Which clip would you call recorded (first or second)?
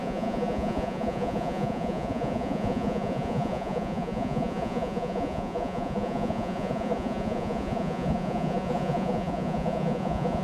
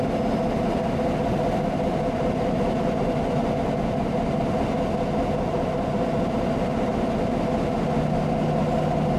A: second